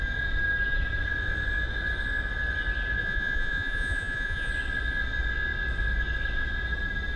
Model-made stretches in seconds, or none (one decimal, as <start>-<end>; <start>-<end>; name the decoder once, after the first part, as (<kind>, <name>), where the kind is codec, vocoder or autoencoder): 3.0-4.5 (vocoder, Vocos)